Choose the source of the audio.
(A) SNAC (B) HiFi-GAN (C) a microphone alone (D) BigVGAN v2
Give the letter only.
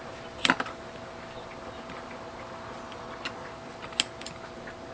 C